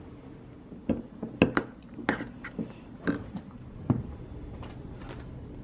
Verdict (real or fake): real